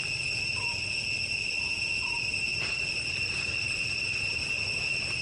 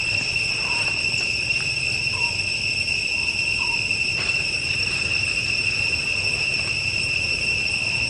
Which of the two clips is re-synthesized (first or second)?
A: second